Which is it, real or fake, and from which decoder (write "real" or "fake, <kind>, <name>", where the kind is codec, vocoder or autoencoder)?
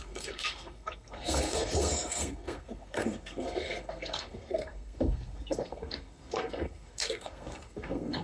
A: fake, codec, SNAC